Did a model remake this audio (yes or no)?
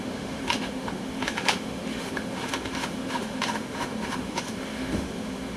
yes